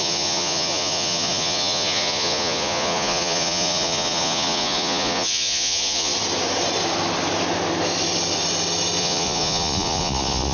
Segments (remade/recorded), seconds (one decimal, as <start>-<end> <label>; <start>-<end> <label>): 0.0-6.1 remade; 6.1-9.0 recorded; 9.0-10.5 remade